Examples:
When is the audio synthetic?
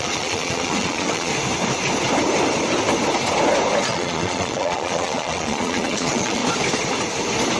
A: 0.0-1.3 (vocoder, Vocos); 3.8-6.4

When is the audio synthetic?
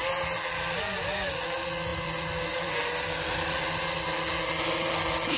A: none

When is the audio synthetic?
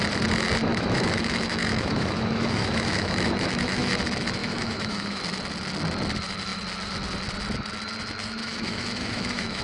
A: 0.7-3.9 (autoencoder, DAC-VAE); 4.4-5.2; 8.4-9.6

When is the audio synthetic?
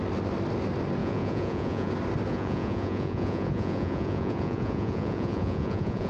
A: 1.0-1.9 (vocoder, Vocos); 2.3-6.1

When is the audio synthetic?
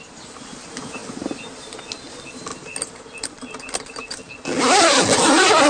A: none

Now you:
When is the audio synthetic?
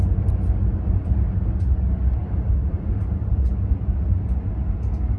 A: 2.2-3.5 (vocoder, BigVGAN v2)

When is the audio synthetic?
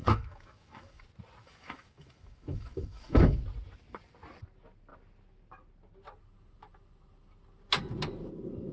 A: 0.0-1.0 (autoencoder, DAC-VAE); 1.4-3.4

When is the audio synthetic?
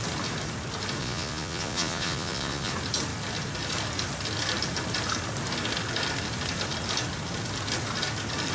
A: 1.0-2.7 (vocoder, Vocos)